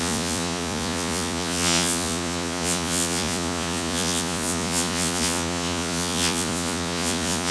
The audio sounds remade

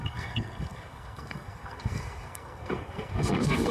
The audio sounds remade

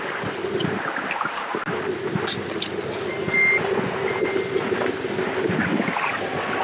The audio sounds recorded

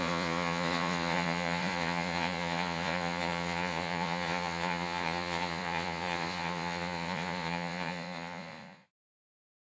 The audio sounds remade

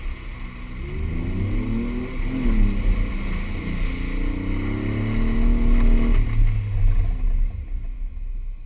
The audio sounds recorded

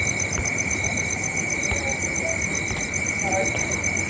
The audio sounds recorded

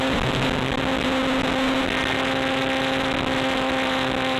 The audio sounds recorded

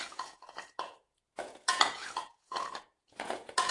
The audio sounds remade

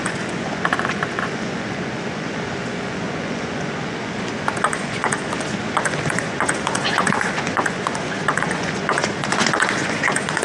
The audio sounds remade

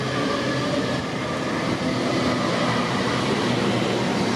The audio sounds recorded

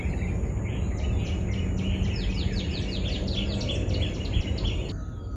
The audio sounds recorded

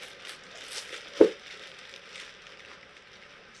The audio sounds recorded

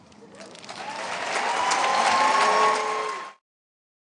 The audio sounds recorded